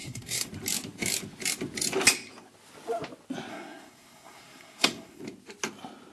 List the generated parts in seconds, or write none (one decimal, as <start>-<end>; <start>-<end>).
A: 0.0-0.5; 3.5-5.2